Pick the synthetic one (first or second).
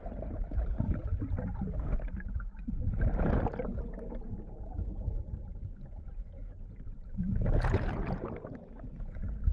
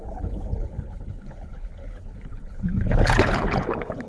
second